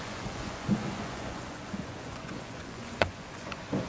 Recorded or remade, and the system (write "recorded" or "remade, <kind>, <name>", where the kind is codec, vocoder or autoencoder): remade, vocoder, Vocos